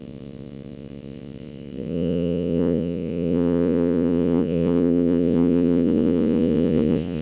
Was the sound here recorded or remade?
remade